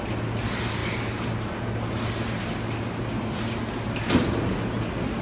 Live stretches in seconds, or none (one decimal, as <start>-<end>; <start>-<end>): 0.0-5.2